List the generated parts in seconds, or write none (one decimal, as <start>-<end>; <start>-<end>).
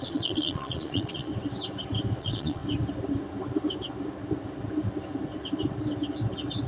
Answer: 0.0-1.3; 2.2-2.6